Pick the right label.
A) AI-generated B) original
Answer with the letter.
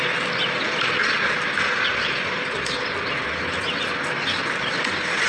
B